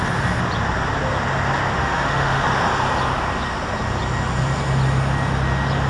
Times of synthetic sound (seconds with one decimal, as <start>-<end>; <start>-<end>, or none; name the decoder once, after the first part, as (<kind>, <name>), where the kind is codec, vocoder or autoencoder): 1.8-2.4 (autoencoder, DAC-VAE)